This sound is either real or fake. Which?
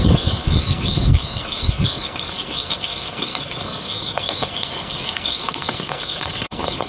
fake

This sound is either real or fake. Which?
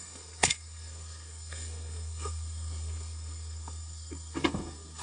fake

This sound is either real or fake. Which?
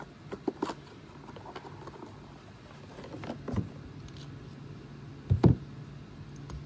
real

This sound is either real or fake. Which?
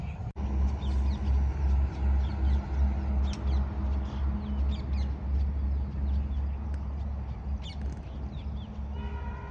real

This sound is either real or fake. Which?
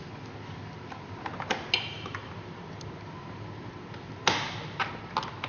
real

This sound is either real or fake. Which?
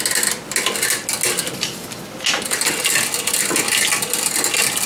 real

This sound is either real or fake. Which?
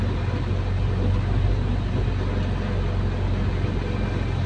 real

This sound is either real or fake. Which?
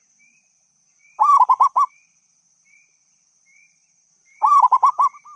real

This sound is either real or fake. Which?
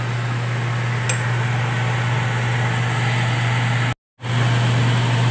real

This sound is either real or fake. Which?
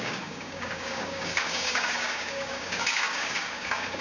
fake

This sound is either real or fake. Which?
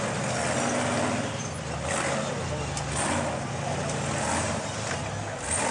real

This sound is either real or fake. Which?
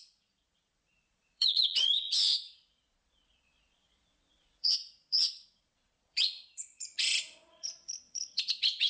fake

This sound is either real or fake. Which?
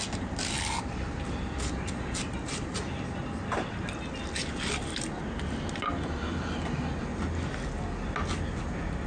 real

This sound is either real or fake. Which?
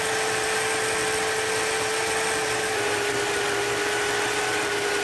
real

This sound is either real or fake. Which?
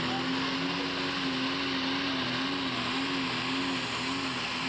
real